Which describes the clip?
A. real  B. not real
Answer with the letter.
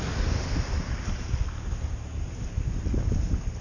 A